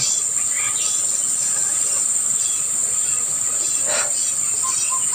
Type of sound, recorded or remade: recorded